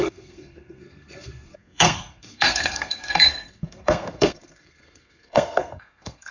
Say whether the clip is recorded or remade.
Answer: remade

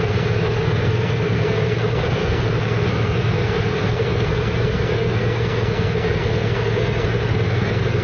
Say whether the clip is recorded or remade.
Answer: remade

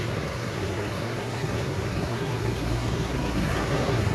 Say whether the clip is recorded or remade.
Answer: remade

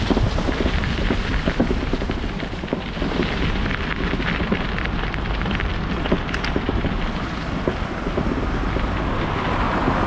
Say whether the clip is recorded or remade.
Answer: recorded